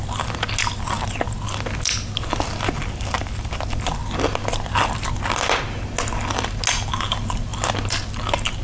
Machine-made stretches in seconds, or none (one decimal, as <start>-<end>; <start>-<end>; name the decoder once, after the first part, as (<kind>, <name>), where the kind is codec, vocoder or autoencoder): none